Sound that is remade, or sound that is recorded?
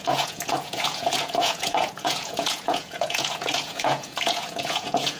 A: remade